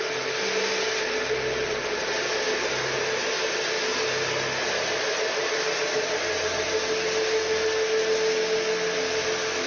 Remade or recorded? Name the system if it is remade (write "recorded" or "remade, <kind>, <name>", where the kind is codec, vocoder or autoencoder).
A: recorded